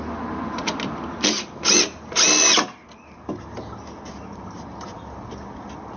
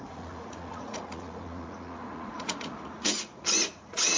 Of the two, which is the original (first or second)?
first